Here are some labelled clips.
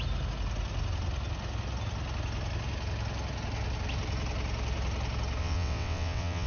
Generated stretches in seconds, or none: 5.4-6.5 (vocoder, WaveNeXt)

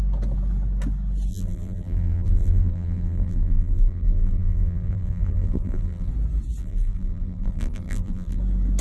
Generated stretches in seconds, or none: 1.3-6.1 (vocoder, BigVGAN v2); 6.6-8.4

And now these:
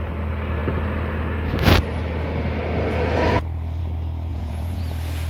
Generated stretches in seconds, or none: 4.3-4.8 (vocoder, Vocos)

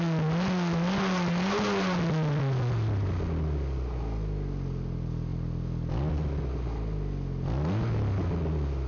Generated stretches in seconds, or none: none

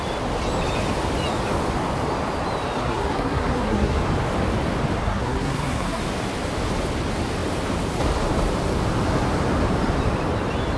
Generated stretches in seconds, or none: 2.8-4.0 (codec, SNAC); 5.0-6.0

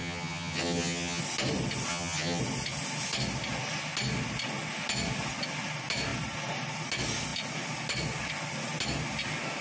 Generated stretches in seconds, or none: 0.0-1.2 (vocoder, HiFi-GAN); 1.9-2.4